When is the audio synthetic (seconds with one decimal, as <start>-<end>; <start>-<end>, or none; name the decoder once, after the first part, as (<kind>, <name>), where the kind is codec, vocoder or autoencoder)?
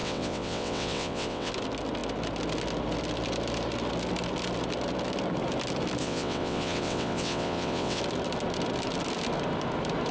0.0-1.5 (vocoder, WaveNeXt); 6.0-8.0